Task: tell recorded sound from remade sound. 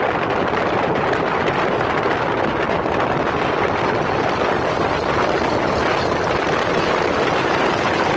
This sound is recorded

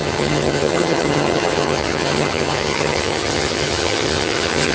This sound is remade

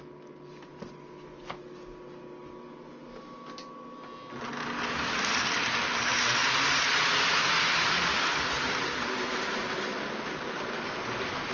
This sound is recorded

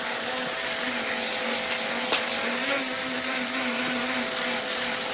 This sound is recorded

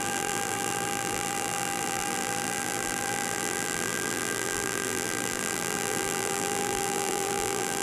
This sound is remade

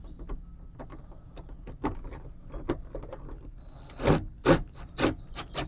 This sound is recorded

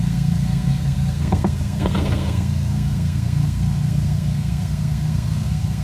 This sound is remade